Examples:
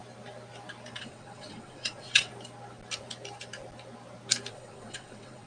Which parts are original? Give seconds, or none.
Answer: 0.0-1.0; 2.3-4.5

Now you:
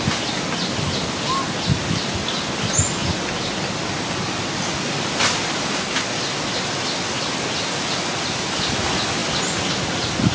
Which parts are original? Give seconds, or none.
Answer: 0.0-10.3

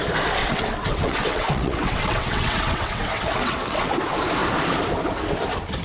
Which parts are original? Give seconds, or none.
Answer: 0.0-0.4; 3.9-5.8

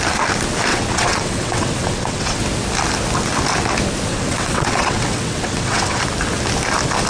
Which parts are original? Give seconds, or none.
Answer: 0.0-0.7; 2.4-4.1; 6.0-7.1

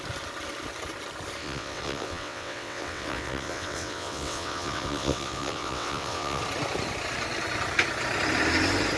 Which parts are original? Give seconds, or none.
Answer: 0.0-1.4; 6.4-9.0